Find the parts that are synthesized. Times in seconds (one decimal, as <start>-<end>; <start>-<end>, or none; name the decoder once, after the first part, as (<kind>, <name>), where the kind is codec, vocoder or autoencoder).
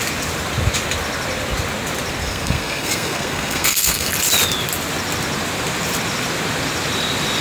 2.2-4.1 (codec, SNAC)